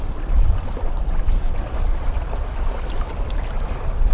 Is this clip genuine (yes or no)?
no